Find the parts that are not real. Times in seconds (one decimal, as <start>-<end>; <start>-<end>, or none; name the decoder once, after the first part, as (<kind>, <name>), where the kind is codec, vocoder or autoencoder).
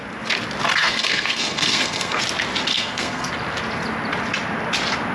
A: 0.8-2.2 (codec, SNAC); 2.7-3.3